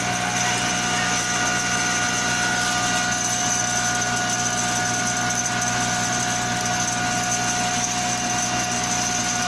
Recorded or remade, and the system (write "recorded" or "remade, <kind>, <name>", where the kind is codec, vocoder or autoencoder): recorded